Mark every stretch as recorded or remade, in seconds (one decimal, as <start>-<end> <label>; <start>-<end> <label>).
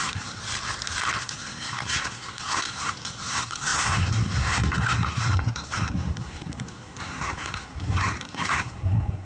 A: 0.0-0.4 remade; 0.4-1.2 recorded; 1.2-9.2 remade